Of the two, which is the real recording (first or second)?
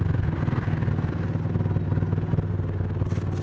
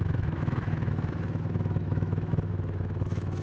first